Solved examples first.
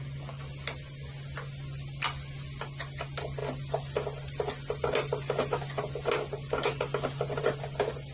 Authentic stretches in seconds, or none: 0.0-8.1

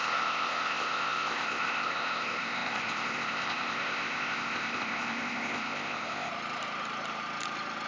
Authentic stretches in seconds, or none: 6.3-7.9